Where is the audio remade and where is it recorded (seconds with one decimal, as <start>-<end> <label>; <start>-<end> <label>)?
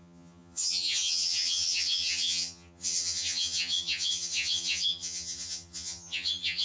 0.0-6.6 remade